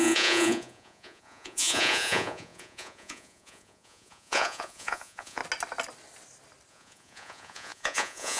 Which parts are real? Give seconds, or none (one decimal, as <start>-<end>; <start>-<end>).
5.4-6.7